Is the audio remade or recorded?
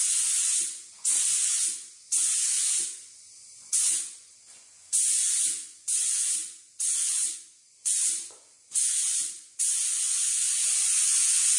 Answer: remade